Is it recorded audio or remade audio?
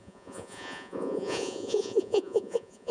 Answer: remade